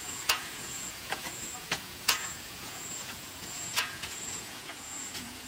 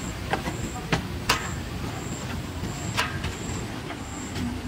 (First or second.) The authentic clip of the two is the second